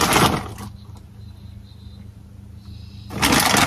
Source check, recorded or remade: recorded